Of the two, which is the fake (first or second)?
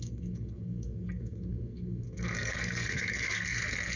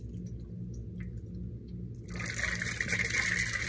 first